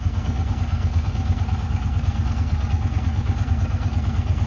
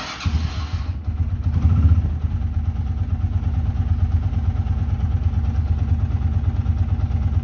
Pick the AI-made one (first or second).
first